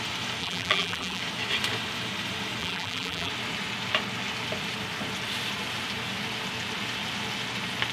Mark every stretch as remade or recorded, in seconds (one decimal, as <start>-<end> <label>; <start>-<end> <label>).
0.0-0.4 recorded; 0.4-1.2 remade; 1.2-2.6 recorded; 2.6-3.3 remade; 3.3-7.9 recorded